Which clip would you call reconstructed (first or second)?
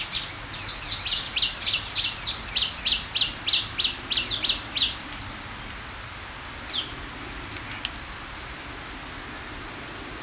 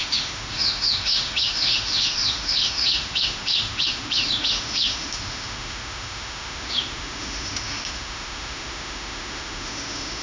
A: second